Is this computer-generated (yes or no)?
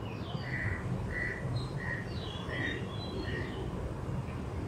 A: no